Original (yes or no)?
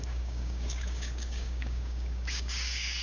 no